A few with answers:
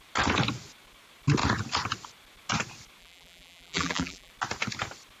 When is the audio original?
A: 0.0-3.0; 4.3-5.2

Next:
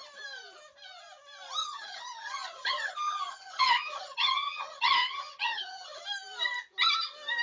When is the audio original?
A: 0.0-1.6; 6.0-7.4

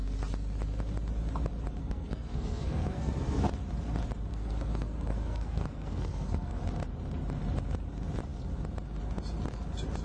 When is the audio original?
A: 0.0-1.8; 3.4-4.3; 6.6-10.0